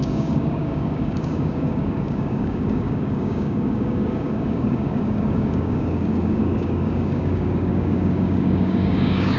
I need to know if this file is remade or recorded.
remade